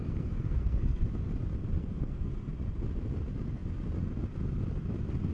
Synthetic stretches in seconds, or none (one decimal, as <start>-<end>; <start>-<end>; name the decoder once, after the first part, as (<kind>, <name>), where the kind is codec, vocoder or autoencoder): 0.0-1.1 (codec, SNAC); 1.8-2.3